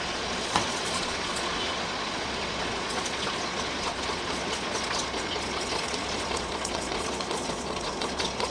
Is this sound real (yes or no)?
no